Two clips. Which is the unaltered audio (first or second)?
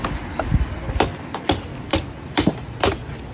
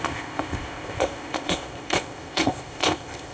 first